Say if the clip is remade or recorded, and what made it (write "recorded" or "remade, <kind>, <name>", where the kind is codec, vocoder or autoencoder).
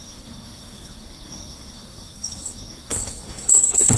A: remade, codec, SNAC